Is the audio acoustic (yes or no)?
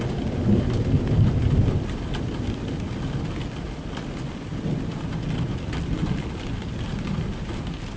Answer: yes